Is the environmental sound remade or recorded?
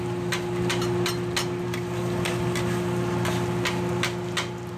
recorded